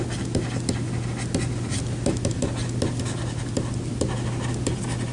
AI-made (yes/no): no